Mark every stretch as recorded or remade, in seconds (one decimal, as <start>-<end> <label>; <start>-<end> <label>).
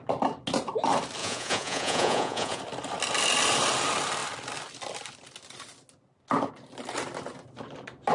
0.0-1.2 recorded; 1.2-2.6 remade; 2.6-8.1 recorded